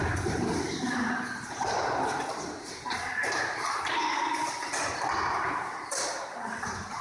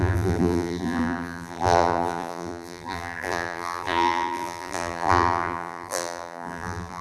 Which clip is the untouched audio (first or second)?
first